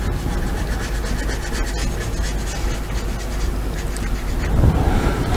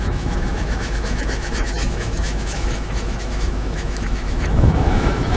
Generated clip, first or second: second